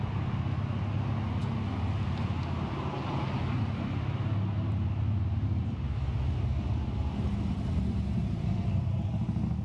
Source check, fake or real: real